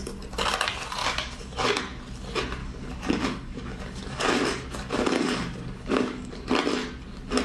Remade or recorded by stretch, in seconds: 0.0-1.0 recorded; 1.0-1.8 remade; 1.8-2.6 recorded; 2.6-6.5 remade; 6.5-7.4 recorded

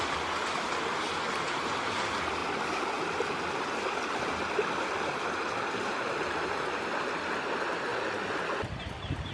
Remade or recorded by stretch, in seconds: 0.0-9.3 recorded

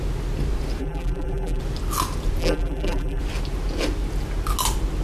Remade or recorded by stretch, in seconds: 0.0-0.8 recorded; 0.8-1.6 remade; 1.6-2.4 recorded; 2.4-3.2 remade; 3.2-5.0 recorded

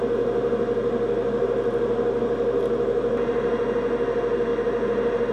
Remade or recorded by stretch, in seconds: 0.0-5.3 recorded